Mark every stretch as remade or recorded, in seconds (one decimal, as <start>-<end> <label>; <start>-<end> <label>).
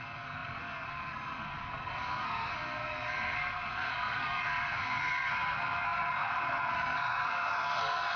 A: 0.0-8.2 remade